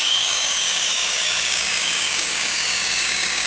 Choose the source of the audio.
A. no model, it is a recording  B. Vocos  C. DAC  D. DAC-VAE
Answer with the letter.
C